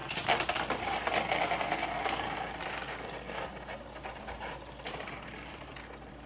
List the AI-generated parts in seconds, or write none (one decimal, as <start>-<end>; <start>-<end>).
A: 1.4-2.8; 4.1-6.3